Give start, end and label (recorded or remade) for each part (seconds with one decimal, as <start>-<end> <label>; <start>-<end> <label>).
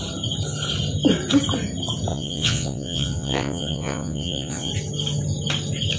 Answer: 0.0-2.1 recorded; 2.1-4.7 remade; 4.7-6.0 recorded